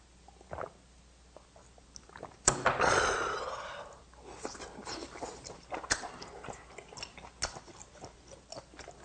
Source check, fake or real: real